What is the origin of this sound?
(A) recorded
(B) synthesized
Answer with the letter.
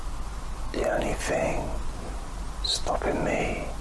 A